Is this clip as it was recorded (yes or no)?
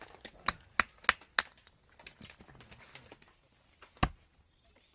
yes